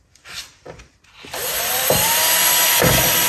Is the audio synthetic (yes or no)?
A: yes